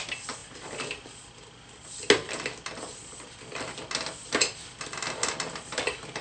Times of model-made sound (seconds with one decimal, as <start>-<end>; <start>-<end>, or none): none